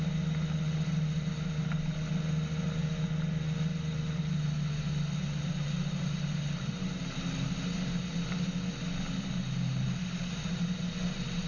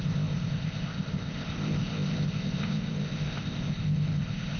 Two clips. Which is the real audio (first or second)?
first